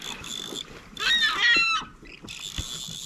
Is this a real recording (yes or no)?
yes